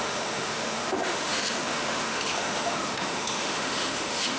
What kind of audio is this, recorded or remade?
remade